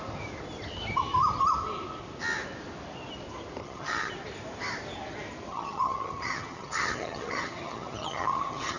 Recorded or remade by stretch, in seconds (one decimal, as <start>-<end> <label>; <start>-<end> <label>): 0.0-3.6 recorded; 3.6-4.1 remade; 4.1-5.5 recorded; 5.5-8.8 remade